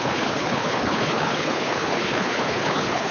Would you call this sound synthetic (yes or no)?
yes